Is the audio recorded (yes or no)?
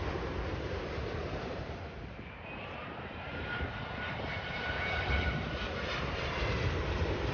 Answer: no